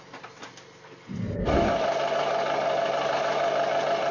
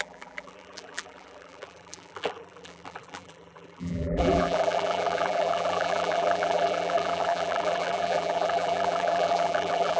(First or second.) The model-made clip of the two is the second